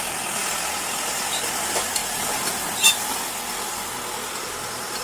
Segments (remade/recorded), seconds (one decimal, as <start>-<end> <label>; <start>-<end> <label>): 0.0-5.0 recorded